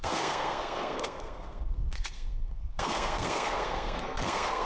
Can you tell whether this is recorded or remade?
remade